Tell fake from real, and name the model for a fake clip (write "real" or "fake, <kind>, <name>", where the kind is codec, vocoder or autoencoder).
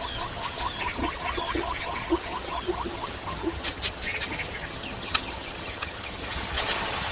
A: fake, vocoder, HiFi-GAN